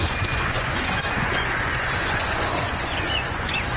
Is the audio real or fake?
fake